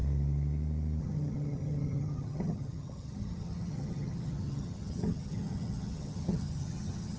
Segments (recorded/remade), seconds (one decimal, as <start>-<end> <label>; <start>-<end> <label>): 0.0-1.0 recorded; 1.0-7.2 remade